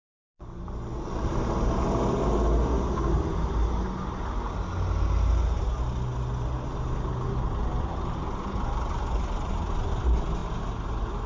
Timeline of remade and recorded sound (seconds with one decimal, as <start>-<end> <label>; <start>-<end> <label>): 0.0-11.3 recorded